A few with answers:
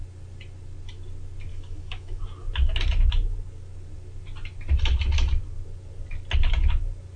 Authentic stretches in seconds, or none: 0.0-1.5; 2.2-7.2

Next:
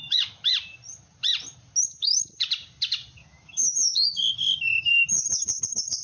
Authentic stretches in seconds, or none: 0.5-3.2; 5.1-6.0

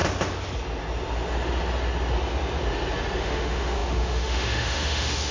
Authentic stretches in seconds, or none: 0.0-3.2